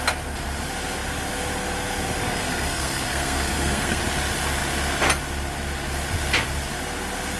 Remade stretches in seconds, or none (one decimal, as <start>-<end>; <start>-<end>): 2.2-4.0

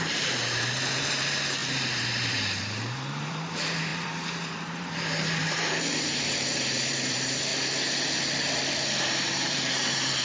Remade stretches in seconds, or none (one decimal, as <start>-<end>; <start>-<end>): 0.0-7.5; 9.0-10.2

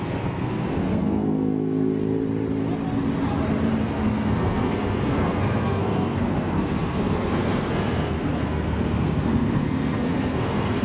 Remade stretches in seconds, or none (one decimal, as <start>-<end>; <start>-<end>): 0.0-2.0; 3.8-10.8